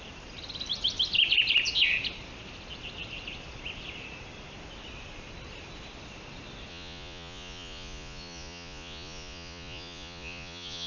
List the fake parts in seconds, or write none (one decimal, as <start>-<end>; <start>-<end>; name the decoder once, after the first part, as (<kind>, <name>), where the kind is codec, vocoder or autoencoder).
6.7-10.9 (vocoder, Vocos)